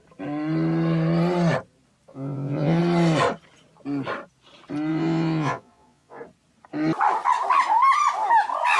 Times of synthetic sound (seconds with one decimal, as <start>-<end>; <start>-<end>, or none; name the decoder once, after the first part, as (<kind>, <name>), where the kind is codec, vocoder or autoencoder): 2.1-2.8 (vocoder, Vocos); 4.9-6.2